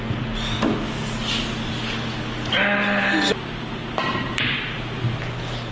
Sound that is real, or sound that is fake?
real